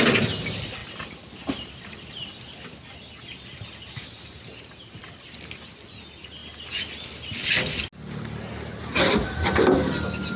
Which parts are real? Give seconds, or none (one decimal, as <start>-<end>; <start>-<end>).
0.0-10.4